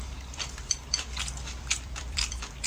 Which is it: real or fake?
fake